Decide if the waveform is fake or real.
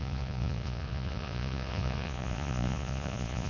fake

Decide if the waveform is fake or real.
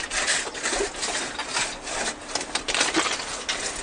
real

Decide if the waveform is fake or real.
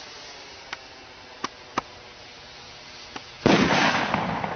real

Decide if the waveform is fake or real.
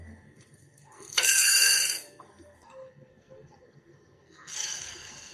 fake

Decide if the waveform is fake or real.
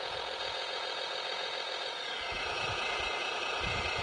fake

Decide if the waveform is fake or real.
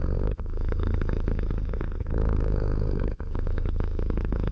fake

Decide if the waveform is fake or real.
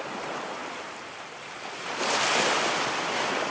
real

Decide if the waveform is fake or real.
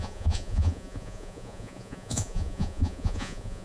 fake